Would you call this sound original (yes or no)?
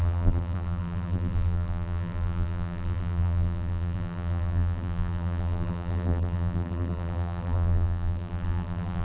no